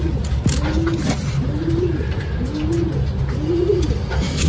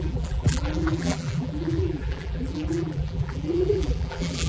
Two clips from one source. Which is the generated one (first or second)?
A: second